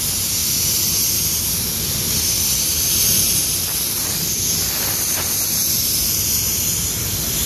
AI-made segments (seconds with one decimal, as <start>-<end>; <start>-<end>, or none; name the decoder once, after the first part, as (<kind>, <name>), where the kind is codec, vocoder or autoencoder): none

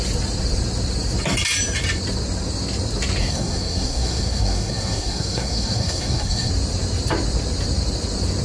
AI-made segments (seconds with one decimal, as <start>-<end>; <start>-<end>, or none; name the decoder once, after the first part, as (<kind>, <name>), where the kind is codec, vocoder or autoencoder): 3.2-6.5 (codec, SNAC)

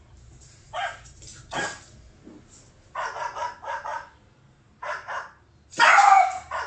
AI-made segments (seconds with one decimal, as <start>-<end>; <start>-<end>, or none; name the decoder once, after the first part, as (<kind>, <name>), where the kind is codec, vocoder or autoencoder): 0.0-1.3 (vocoder, BigVGAN v2); 3.6-6.7

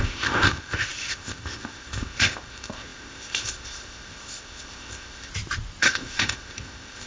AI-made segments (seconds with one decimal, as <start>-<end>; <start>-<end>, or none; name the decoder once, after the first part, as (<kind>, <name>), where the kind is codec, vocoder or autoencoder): 0.0-5.3 (codec, ZipCodec); 5.8-7.1